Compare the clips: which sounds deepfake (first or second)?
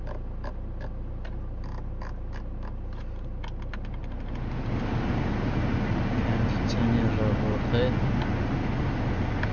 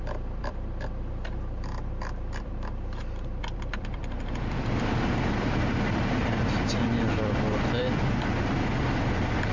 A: second